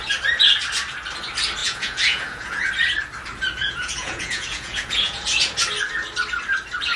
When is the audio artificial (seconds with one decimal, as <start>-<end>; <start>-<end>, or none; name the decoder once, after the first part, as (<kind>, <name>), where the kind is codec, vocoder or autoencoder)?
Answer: 1.6-2.7 (vocoder, Vocos); 3.6-5.4